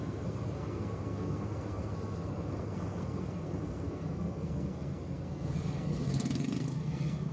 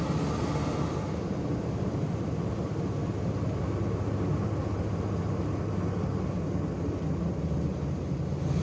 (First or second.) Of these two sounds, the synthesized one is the first